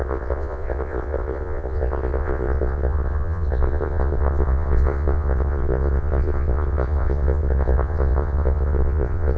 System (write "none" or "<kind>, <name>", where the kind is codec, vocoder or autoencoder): vocoder, Vocos